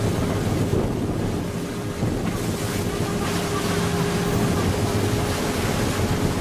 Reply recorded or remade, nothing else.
recorded